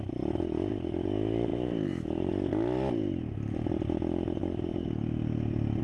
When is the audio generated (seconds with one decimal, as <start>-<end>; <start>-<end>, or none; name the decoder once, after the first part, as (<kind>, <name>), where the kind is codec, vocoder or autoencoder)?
1.5-2.3 (vocoder, BigVGAN v2)